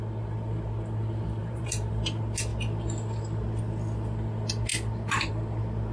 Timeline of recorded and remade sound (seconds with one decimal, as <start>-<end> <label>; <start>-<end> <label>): 0.0-1.4 recorded; 1.4-1.9 remade; 1.9-5.9 recorded